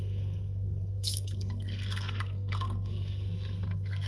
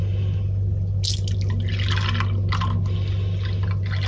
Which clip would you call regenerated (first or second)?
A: first